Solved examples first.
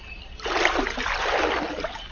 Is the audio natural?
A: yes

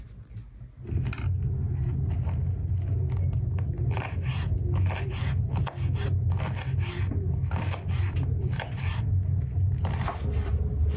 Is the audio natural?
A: yes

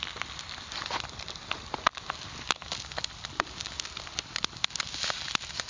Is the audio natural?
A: yes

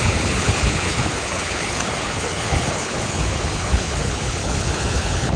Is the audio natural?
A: no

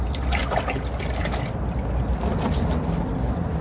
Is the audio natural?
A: yes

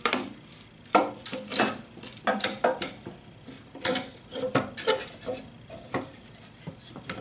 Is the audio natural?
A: no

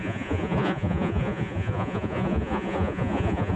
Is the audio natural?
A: no